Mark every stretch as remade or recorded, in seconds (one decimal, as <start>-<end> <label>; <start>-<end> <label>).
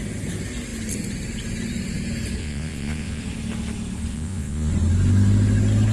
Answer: 0.0-2.4 recorded; 2.4-3.2 remade; 3.2-4.1 recorded; 4.1-4.7 remade; 4.7-5.9 recorded